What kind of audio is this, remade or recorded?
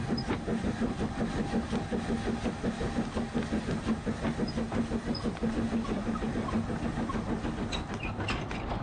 recorded